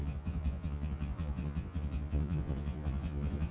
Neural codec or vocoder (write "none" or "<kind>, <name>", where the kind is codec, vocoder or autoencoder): vocoder, Vocos